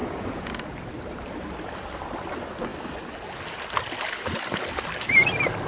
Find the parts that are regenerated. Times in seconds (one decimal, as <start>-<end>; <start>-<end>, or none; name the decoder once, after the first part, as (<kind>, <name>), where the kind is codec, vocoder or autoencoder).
0.0-0.5 (vocoder, Vocos)